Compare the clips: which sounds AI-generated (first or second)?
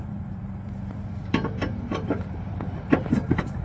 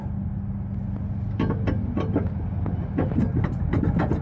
first